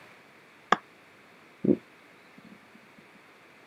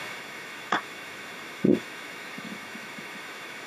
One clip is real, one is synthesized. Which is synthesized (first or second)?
second